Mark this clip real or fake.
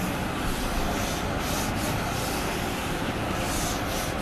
real